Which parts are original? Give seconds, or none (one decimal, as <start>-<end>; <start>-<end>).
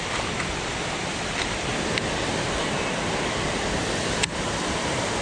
1.7-4.8